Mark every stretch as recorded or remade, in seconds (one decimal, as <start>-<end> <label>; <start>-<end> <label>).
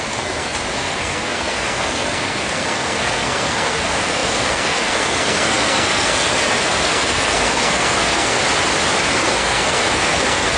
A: 0.0-8.4 remade; 8.4-9.1 recorded; 9.1-10.6 remade